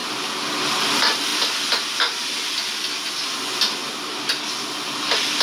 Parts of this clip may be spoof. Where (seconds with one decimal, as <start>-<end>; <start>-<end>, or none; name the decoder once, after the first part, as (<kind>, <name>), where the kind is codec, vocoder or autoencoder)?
none